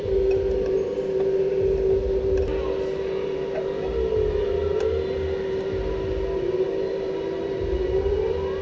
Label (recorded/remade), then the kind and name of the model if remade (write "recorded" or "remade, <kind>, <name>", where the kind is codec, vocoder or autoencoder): recorded